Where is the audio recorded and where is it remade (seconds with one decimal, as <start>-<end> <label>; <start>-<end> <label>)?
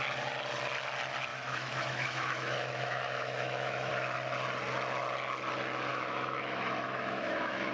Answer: 0.0-1.3 recorded; 1.3-3.9 remade; 3.9-5.9 recorded; 5.9-7.7 remade